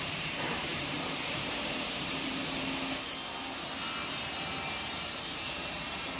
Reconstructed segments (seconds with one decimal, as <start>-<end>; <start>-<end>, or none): 0.0-2.4; 4.1-6.2

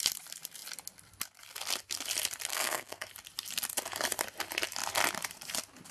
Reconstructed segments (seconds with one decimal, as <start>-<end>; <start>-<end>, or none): 2.5-3.1

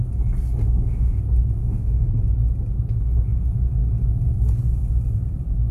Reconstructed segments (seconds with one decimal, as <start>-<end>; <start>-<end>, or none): 0.6-1.2; 1.6-2.1

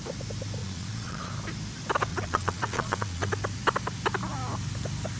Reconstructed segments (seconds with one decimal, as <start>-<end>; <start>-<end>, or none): 0.6-1.3; 2.1-3.3

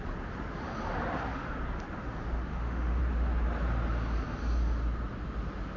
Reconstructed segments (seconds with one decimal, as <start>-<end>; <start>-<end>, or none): 2.5-3.0

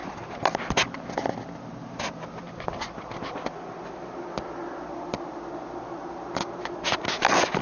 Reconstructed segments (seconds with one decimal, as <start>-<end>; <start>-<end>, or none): none

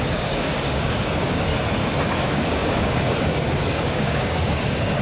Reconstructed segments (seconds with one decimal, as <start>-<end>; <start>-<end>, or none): 0.0-1.5; 2.1-5.0

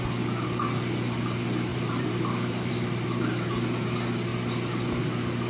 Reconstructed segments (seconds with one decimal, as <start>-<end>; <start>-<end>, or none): 1.7-2.7